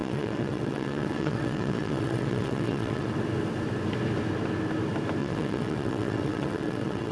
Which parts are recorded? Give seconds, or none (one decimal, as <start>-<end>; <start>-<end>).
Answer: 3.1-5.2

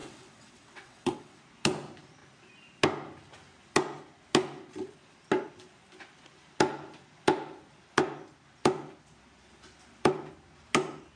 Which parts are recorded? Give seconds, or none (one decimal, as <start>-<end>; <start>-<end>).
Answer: 1.4-11.2

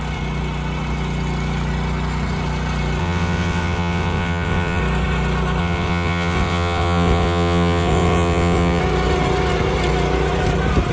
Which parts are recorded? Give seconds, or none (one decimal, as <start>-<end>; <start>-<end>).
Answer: 0.0-3.0; 4.8-5.6; 8.8-10.9

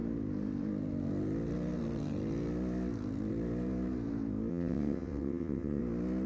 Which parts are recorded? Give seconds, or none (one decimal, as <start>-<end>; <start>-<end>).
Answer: 0.0-4.5; 5.8-6.3

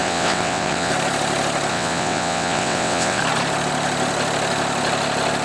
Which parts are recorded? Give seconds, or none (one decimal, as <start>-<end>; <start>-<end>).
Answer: 0.9-1.7; 3.2-5.4

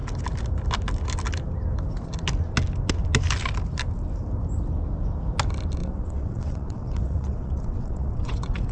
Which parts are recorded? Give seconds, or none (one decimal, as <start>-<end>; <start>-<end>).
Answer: 0.0-5.8